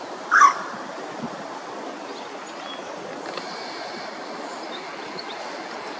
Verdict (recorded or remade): recorded